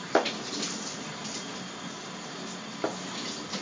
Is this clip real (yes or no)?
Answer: yes